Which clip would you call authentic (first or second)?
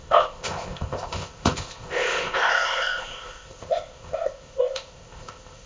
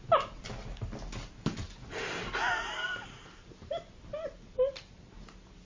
second